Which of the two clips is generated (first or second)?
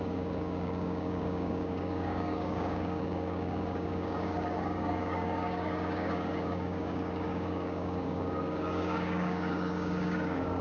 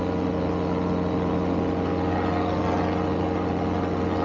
first